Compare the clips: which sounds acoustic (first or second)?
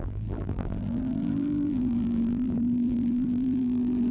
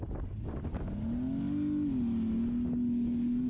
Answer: second